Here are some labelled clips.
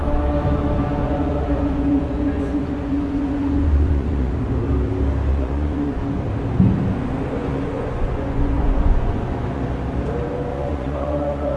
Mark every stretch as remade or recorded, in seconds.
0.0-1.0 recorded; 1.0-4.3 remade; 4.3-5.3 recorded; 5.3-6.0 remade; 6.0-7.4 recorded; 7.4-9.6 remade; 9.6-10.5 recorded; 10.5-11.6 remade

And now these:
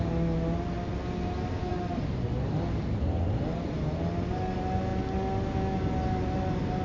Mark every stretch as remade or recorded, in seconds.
0.0-6.8 recorded

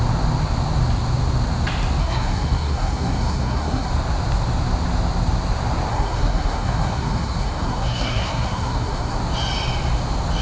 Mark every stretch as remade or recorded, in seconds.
0.0-2.0 recorded; 2.0-3.9 remade; 3.9-5.9 recorded; 5.9-9.2 remade; 9.2-10.4 recorded

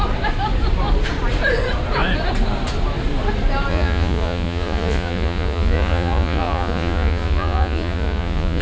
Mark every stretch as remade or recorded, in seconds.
0.0-3.7 recorded; 3.7-8.6 remade

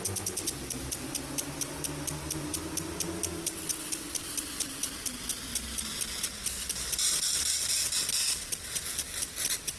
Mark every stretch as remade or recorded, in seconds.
0.0-9.8 recorded

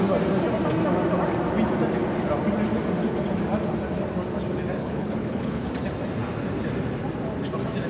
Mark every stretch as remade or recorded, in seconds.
0.0-4.8 recorded; 4.8-5.7 remade; 5.7-7.9 recorded